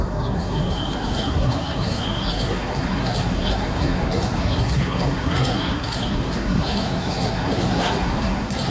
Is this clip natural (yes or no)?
no